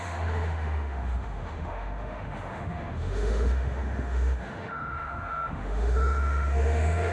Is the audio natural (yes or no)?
no